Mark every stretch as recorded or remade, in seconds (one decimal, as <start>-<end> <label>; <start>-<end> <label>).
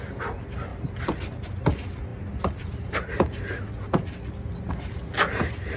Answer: 0.0-5.8 recorded